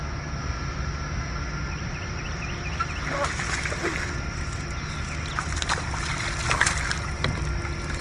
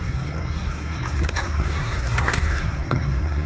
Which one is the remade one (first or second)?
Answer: second